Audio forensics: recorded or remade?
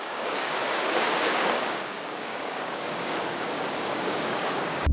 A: remade